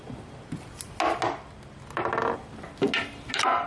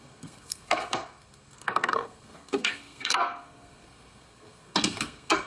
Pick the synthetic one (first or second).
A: second